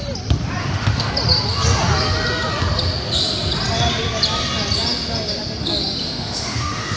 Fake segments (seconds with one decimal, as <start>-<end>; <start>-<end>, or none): 0.6-1.1; 6.0-7.0